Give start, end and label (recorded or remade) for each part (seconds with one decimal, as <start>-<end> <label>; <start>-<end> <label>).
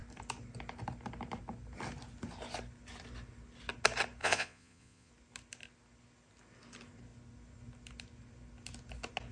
0.0-4.2 recorded; 4.2-5.1 remade; 5.1-9.3 recorded